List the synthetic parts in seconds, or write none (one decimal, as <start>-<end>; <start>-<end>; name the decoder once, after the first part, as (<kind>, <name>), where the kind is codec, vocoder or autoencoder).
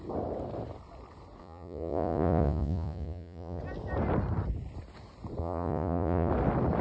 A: 1.4-3.6 (vocoder, Vocos); 5.4-6.3